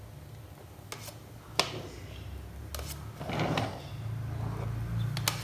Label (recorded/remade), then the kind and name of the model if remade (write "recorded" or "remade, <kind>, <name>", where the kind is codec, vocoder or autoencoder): recorded